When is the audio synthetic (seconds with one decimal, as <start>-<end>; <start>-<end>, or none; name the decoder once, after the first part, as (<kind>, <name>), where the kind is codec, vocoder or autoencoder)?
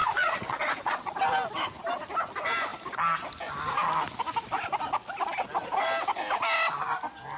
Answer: 0.0-1.1 (vocoder, Vocos)